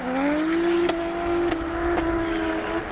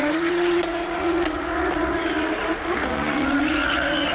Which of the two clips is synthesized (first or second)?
second